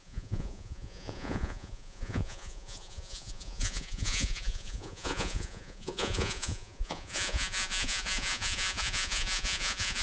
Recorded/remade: remade